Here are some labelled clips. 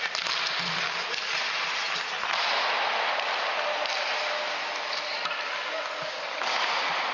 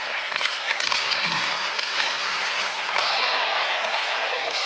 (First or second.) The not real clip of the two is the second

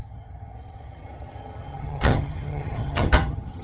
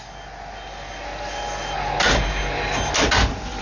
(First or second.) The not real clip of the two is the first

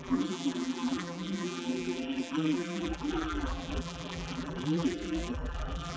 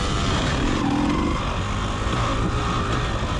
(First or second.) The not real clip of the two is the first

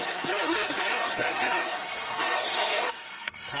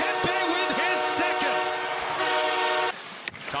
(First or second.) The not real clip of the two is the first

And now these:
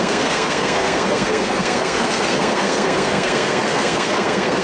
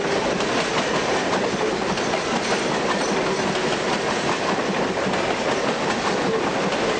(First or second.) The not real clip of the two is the first